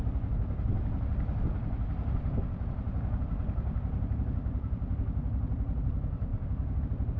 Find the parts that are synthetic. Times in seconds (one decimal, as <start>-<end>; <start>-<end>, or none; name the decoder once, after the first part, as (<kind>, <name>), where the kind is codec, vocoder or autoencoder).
6.3-6.8 (codec, DAC)